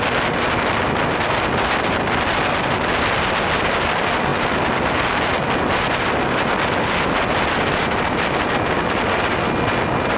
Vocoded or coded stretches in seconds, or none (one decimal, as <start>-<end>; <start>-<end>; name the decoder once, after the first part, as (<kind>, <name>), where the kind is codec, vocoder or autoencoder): none